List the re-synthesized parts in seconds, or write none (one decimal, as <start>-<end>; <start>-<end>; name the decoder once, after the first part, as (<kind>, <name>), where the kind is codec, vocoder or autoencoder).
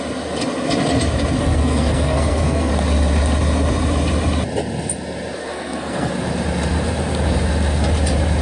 1.4-2.7 (codec, SNAC); 5.4-6.1